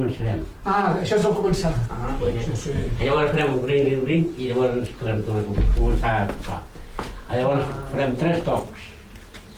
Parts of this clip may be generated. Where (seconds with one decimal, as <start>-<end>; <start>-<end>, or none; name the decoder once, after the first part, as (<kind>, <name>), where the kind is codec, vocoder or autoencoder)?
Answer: 1.2-4.2 (vocoder, BigVGAN v2)